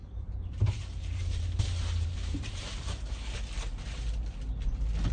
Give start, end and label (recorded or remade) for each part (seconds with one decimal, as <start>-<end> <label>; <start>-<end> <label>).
0.0-3.1 remade; 3.1-5.1 recorded

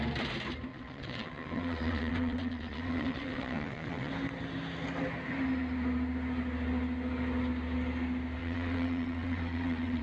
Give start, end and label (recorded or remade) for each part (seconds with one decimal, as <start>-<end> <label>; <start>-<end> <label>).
0.0-0.7 recorded; 0.7-4.1 remade; 4.1-8.4 recorded; 8.4-10.0 remade